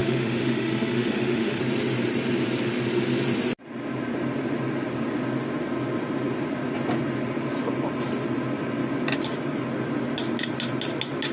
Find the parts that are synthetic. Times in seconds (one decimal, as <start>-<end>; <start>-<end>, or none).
0.0-1.6